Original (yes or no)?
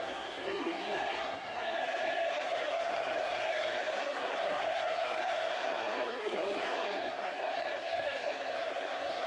no